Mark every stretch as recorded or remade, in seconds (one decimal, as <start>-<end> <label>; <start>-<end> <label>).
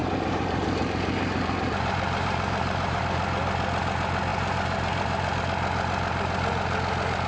0.0-3.0 remade; 3.0-4.3 recorded; 4.3-5.4 remade; 5.4-7.3 recorded